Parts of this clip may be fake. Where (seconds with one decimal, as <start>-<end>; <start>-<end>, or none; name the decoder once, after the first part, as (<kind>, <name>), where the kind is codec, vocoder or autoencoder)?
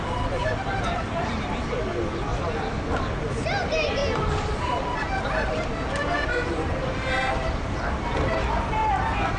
none